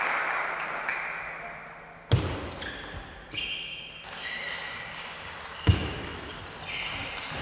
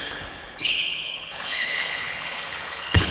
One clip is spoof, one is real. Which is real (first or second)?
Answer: first